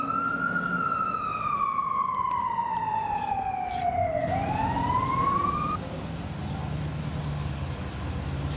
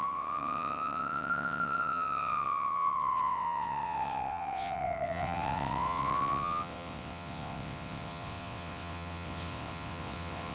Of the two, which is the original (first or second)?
first